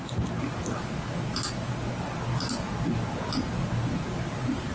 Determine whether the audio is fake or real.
real